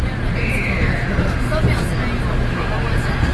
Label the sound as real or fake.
real